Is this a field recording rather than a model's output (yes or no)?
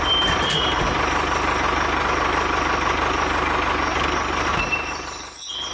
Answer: yes